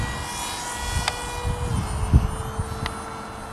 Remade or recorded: recorded